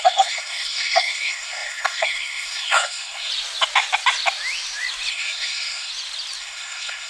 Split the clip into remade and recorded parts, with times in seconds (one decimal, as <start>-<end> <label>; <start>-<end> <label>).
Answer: 0.0-3.3 remade; 3.3-5.1 recorded; 5.1-5.9 remade; 5.9-6.4 recorded; 6.4-7.1 remade